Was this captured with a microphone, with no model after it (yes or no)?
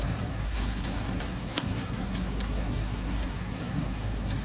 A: no